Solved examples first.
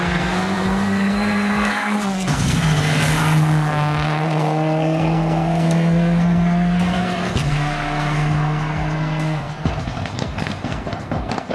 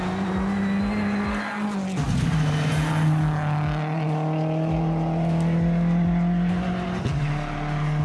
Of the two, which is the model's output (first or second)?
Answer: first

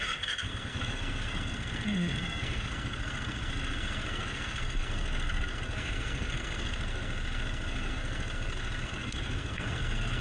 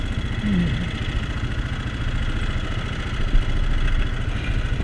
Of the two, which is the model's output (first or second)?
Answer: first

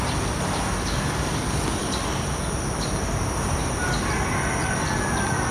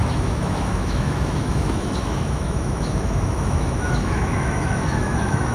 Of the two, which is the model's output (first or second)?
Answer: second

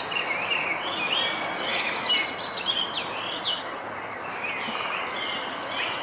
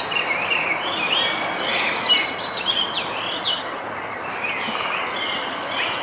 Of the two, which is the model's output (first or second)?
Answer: second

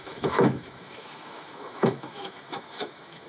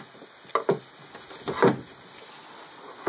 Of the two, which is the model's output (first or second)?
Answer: first